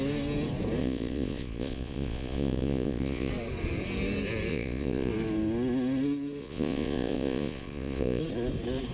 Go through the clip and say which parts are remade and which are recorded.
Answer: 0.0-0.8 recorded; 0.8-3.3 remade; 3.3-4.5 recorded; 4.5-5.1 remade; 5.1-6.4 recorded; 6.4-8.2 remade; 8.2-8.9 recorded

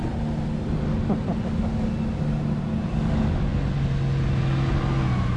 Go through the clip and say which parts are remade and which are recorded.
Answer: 0.0-5.4 recorded

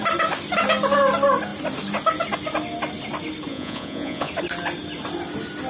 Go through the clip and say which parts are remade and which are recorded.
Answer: 0.0-3.5 recorded; 3.5-4.3 remade; 4.3-5.7 recorded